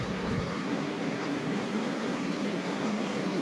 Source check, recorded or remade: remade